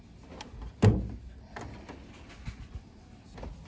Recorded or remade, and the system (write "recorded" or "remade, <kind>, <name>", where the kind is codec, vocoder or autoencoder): recorded